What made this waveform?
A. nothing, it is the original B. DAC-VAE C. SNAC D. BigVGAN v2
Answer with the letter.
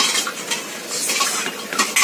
A